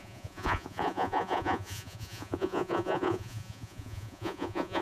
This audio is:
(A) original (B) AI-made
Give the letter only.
B